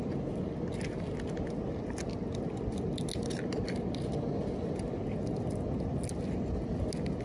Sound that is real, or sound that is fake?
real